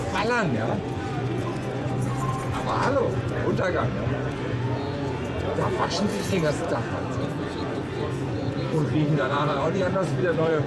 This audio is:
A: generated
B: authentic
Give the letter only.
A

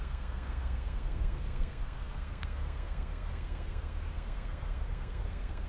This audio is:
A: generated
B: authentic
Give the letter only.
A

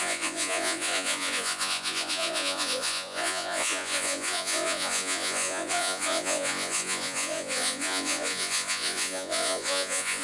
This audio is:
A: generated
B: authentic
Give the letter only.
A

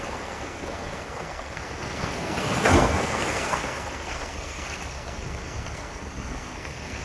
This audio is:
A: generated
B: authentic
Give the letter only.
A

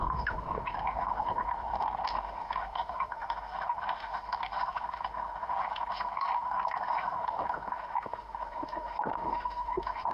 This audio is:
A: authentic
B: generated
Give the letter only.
B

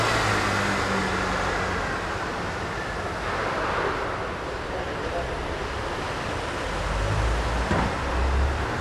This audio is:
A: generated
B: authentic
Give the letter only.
B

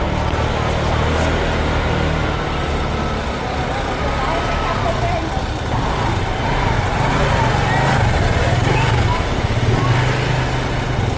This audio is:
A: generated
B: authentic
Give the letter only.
B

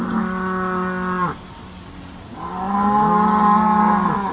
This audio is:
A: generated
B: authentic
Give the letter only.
B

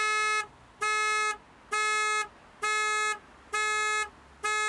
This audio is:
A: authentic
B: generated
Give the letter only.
A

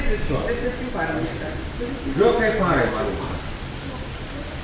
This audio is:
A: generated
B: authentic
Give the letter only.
B